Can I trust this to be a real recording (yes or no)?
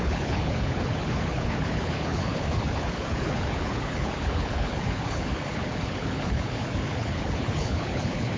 no